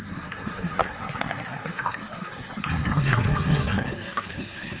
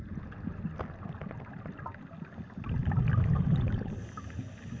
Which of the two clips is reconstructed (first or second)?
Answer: first